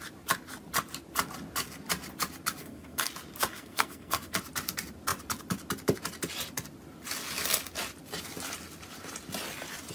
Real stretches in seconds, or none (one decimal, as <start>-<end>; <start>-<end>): 0.0-2.6; 3.1-3.5; 4.4-9.9